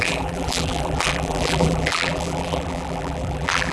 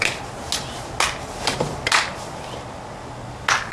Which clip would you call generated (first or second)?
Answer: first